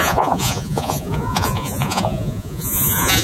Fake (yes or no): yes